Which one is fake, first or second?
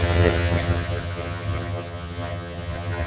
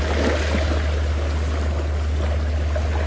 first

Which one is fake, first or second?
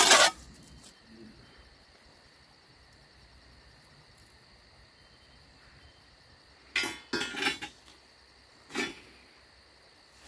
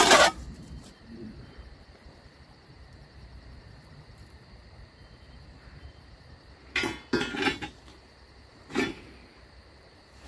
second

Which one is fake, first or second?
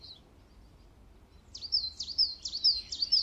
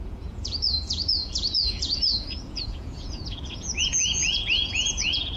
second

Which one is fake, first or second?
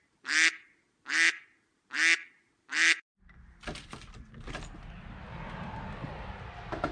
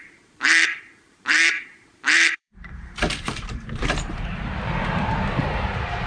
second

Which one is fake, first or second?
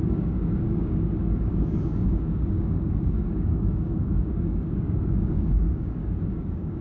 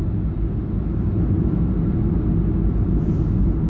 first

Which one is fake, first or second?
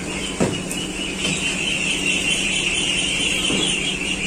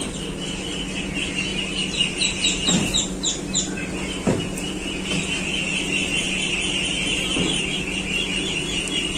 first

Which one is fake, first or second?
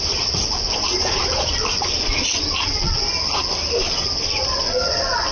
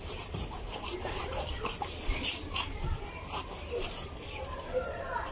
second